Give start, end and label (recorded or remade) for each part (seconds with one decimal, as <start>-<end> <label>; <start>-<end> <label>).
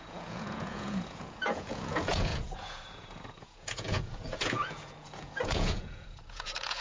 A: 0.0-6.8 remade